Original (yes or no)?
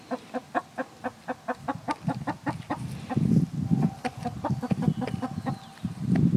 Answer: yes